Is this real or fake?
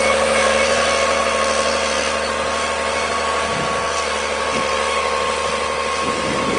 real